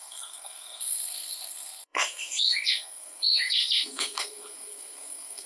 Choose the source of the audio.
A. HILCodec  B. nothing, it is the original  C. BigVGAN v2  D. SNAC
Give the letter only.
D